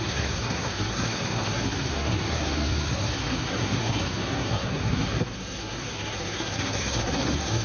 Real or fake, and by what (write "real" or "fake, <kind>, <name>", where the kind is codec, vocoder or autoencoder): fake, codec, SNAC